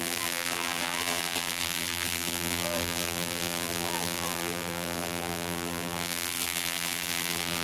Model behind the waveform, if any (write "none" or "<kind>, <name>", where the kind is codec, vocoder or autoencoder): vocoder, BigVGAN v2